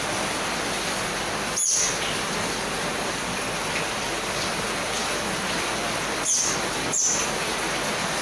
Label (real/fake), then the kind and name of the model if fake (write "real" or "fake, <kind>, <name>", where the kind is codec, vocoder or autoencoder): fake, vocoder, BigVGAN v2